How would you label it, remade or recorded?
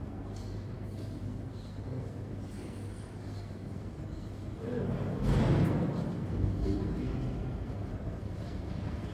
remade